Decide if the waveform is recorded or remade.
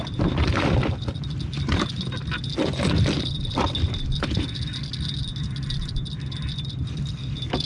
recorded